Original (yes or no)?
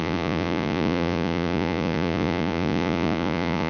no